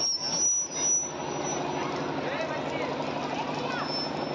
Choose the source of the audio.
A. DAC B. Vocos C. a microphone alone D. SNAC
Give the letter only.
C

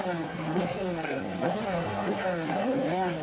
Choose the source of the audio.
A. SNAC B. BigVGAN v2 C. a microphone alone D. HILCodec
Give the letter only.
A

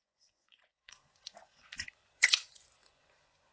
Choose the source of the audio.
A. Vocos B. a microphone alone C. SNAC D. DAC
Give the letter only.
A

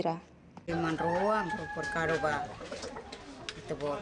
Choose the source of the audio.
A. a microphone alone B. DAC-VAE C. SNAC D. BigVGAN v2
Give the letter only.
A